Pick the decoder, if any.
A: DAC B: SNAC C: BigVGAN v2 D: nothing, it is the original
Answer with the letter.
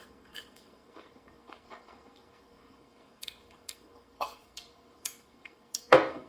B